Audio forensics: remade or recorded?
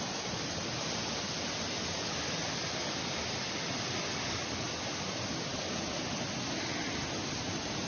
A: recorded